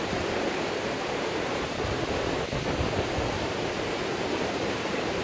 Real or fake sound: real